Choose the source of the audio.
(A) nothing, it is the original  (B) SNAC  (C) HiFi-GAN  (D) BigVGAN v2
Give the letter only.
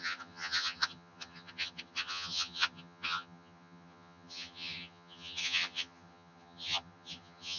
C